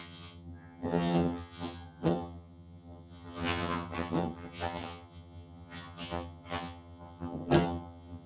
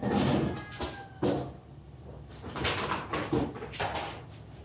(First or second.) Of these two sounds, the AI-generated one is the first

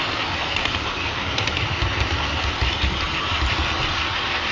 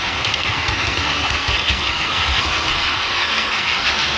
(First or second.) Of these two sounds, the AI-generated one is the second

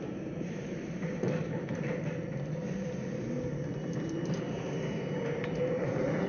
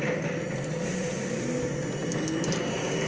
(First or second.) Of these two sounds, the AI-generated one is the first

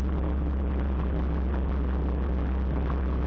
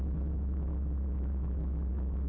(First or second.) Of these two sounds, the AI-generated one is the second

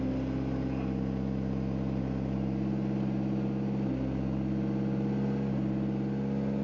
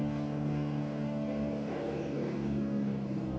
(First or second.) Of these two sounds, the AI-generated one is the second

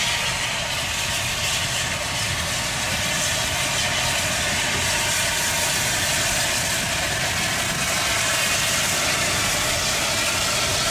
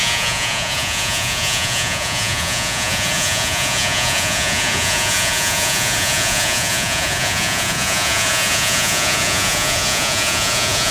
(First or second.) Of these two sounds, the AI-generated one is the second